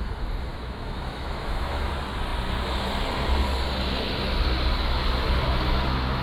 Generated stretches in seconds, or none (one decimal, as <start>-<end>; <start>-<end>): 0.5-1.9